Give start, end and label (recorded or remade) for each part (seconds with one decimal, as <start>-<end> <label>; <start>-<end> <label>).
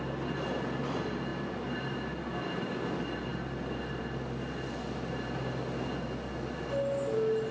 0.0-7.5 recorded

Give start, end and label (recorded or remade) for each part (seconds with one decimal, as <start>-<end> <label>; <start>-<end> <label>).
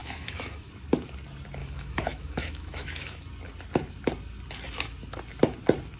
0.0-0.7 remade; 0.7-1.6 recorded; 1.6-3.2 remade; 3.2-6.0 recorded